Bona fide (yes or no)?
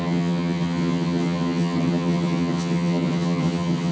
no